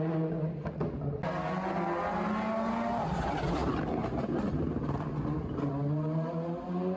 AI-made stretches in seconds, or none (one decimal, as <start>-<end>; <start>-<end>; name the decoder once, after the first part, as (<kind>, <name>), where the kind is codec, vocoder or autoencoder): none